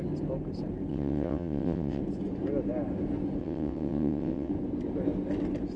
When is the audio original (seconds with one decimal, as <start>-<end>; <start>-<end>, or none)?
0.0-0.9; 2.0-3.4; 4.5-5.8